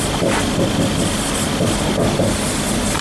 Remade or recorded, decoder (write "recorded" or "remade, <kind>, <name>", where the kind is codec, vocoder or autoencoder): recorded